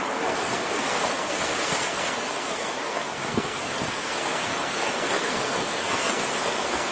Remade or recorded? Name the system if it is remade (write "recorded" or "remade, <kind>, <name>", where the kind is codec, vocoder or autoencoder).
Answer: remade, codec, SNAC